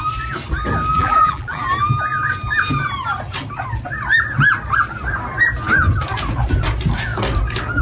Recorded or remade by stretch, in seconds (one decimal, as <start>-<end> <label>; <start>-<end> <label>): 0.0-0.9 recorded; 0.9-1.6 remade; 1.6-7.8 recorded